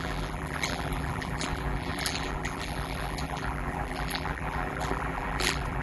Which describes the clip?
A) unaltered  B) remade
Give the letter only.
B